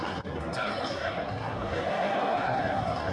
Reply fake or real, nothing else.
fake